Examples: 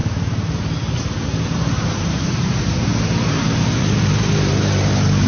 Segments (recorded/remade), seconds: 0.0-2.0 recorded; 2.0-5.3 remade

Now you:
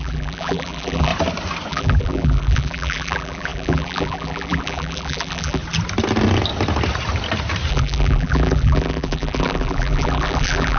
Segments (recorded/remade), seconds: 0.0-1.1 remade; 1.1-1.7 recorded; 1.7-5.6 remade; 5.6-7.7 recorded; 7.7-10.8 remade

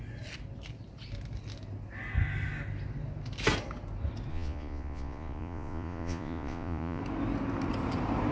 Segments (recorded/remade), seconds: 0.0-4.3 recorded; 4.3-7.0 remade; 7.0-8.3 recorded

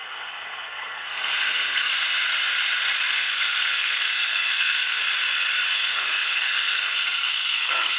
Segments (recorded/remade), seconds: 0.0-1.9 remade; 1.9-3.1 recorded; 3.1-5.0 remade; 5.0-5.7 recorded; 5.7-8.0 remade